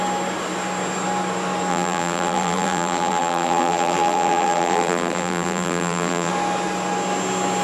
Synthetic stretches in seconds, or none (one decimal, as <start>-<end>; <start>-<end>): 1.7-6.3